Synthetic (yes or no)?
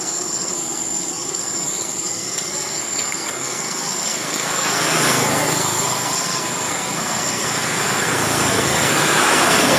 yes